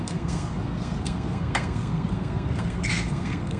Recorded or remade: remade